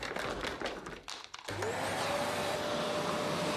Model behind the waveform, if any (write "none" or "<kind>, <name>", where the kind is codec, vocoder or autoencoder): vocoder, BigVGAN v2